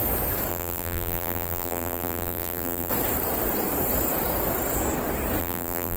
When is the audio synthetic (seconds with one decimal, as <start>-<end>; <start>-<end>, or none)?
0.5-2.9; 5.4-6.0